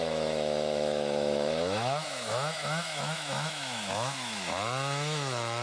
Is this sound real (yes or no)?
no